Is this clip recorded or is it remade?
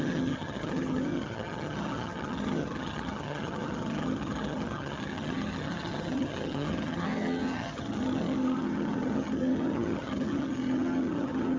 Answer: remade